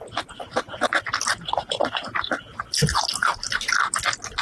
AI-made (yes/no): no